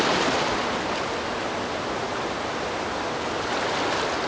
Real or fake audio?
real